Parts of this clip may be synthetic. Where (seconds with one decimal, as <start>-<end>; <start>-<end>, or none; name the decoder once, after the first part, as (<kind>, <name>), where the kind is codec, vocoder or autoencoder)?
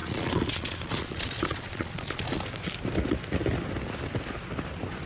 0.0-2.4 (vocoder, Vocos)